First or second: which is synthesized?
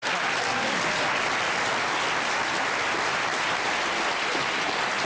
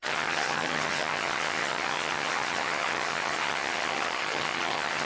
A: second